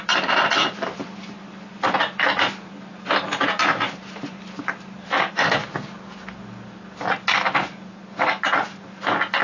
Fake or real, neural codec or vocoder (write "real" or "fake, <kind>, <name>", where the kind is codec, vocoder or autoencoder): real